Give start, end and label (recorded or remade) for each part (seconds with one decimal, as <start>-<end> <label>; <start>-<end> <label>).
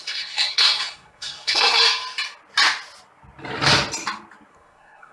0.0-1.8 remade; 1.8-4.5 recorded; 4.5-5.1 remade